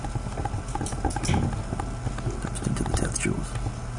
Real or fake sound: real